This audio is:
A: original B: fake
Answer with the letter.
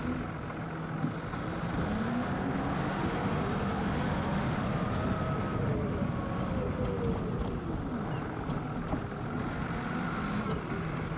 A